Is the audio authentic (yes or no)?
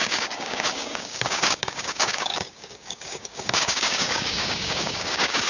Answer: no